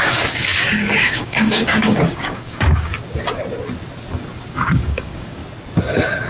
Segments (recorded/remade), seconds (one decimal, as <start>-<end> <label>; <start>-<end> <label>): 0.0-2.9 remade; 2.9-4.5 recorded; 4.5-5.4 remade; 5.4-6.3 recorded